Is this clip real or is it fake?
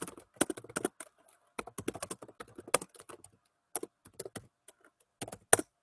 real